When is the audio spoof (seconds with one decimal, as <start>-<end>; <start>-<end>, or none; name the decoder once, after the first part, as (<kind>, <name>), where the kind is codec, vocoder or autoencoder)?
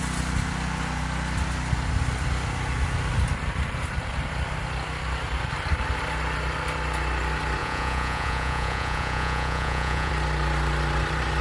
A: 7.6-10.1 (vocoder, Vocos)